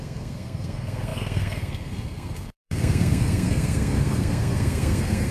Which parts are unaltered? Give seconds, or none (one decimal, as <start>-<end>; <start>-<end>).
none